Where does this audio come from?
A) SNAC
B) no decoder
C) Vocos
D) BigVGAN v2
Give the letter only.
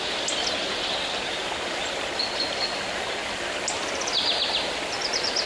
B